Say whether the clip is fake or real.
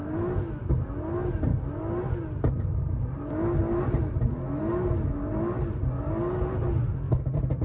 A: real